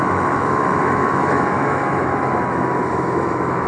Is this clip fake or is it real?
fake